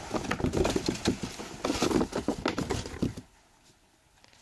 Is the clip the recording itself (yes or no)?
yes